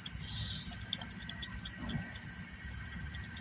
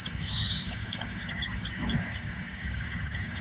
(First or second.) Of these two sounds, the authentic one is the first